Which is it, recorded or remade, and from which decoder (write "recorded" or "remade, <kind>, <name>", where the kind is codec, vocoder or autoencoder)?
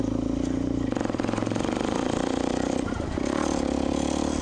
remade, vocoder, BigVGAN v2